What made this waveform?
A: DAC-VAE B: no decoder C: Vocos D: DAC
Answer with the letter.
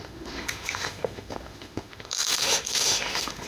A